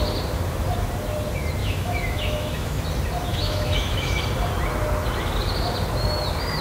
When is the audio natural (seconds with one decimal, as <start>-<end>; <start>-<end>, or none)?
0.0-1.6; 2.8-3.3; 4.2-6.6